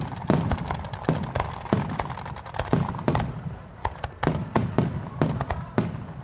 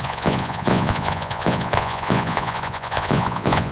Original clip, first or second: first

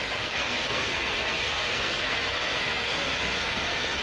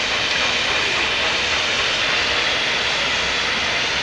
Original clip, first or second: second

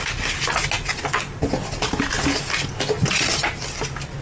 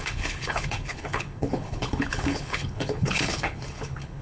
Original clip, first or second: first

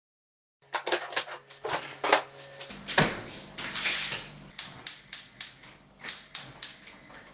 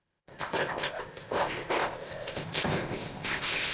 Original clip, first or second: first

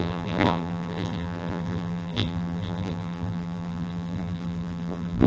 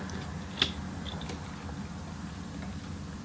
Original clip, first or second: second